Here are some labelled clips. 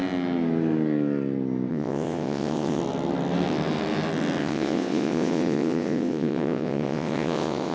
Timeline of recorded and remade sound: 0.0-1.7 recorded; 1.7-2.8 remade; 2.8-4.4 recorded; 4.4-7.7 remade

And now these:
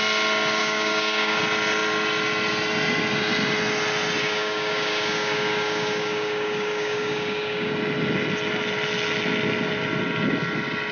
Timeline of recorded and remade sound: 0.0-0.6 recorded; 0.6-1.4 remade; 1.4-4.2 recorded; 4.2-7.7 remade; 7.7-10.9 recorded

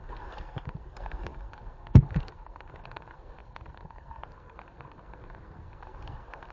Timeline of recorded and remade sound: 0.0-6.5 remade